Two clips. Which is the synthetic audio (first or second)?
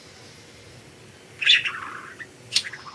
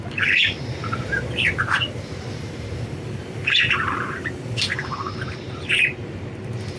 second